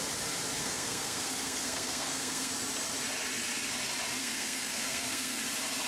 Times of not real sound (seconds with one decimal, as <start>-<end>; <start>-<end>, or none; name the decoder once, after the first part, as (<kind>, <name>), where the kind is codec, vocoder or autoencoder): 0.6-2.5 (codec, SNAC); 4.2-5.4